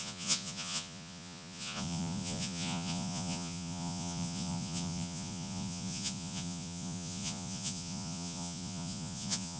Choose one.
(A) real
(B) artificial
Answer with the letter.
B